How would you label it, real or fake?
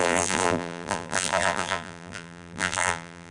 fake